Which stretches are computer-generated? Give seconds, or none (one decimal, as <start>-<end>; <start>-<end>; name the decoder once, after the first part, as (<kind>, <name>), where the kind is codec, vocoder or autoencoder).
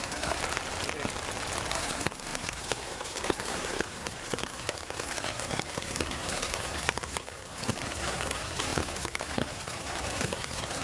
0.0-0.4 (codec, SNAC); 1.7-10.8